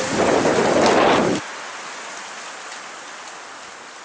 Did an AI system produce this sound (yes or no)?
no